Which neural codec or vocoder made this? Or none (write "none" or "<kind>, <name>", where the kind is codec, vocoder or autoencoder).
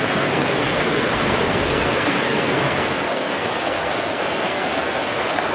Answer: codec, SNAC